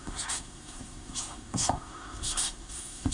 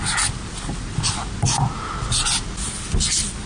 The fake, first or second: first